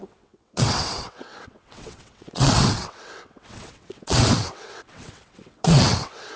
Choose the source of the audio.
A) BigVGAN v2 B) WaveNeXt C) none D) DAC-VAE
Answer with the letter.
B